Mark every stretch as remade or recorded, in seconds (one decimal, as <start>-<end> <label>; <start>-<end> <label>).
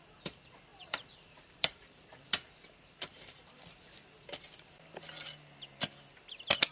0.0-0.7 recorded; 0.7-3.8 remade; 3.8-6.7 recorded